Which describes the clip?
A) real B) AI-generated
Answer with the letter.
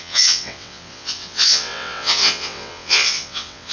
B